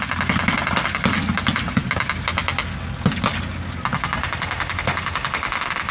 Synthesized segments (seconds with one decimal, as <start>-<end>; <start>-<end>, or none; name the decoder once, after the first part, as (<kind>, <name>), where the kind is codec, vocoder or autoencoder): 4.2-5.9 (autoencoder, DAC-VAE)